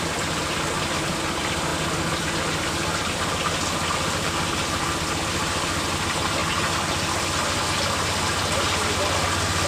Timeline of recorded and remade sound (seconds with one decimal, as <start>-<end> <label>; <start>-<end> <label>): 0.0-9.7 recorded